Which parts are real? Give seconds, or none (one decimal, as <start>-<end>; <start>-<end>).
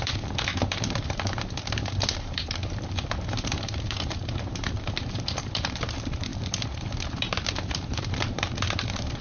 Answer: none